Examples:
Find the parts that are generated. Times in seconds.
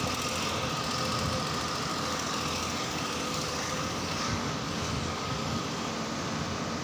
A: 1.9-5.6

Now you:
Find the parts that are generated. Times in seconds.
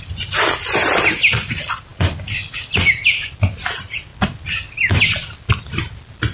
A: none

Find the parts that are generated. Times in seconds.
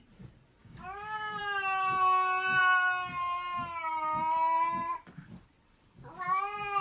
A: 0.6-1.4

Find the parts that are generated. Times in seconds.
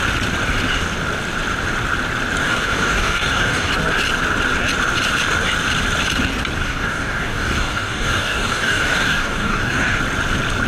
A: 2.4-3.7; 6.6-10.0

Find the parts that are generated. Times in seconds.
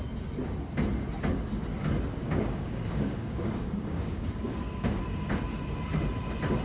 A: 2.2-5.0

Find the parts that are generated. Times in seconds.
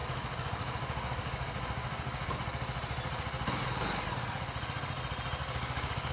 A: 0.0-2.3; 5.4-6.1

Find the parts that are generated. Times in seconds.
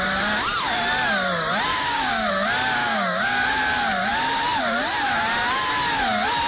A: 1.7-2.3; 2.8-3.6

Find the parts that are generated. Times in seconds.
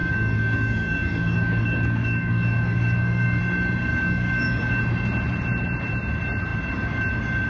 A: 0.0-3.4; 3.9-4.8